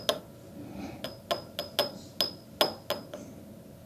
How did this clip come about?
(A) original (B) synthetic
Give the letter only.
A